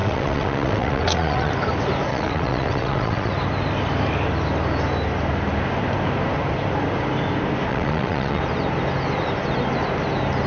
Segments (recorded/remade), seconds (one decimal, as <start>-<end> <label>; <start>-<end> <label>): 0.0-1.5 remade; 1.5-2.1 recorded; 2.1-3.3 remade; 3.3-7.7 recorded; 7.7-8.4 remade; 8.4-10.5 recorded